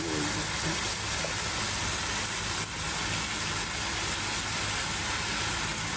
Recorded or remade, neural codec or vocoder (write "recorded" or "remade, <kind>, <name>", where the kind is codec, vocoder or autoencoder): recorded